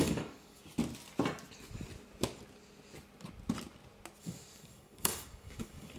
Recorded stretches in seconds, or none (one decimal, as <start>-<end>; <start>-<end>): 0.6-4.2